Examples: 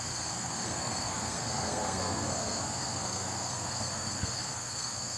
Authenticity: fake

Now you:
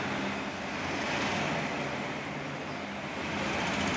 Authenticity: real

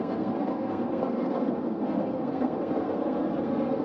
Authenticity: fake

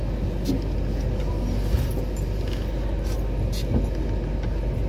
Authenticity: real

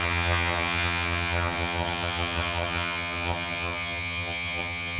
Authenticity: fake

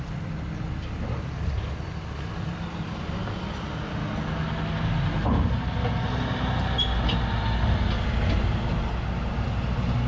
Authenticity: real